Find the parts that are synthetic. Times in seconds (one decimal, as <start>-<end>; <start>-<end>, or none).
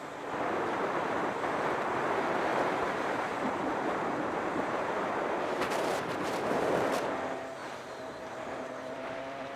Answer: 2.5-6.9; 7.6-9.2